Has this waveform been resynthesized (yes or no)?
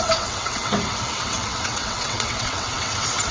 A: yes